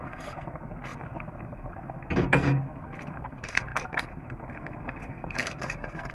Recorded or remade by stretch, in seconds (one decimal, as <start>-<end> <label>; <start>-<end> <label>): 0.0-6.1 remade